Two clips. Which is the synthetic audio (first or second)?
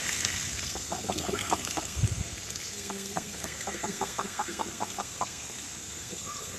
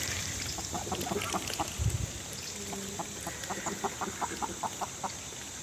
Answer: first